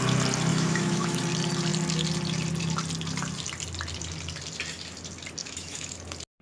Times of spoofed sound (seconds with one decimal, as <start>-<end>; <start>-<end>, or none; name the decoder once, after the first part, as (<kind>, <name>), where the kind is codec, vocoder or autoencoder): 0.5-1.2 (autoencoder, DAC-VAE); 5.4-6.0